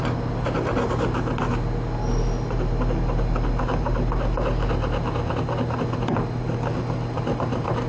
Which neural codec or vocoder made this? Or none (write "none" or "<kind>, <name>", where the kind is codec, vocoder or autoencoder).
none